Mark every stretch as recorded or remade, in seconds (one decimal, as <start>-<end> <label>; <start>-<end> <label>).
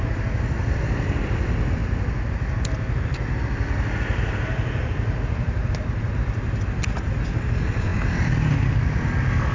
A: 0.0-9.5 recorded